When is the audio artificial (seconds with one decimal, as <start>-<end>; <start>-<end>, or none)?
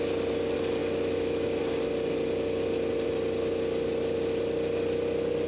0.8-1.6